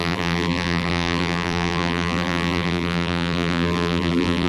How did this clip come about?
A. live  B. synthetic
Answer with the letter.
B